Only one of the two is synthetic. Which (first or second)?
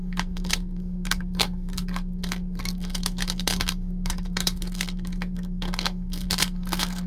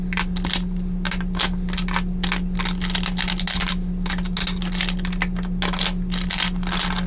first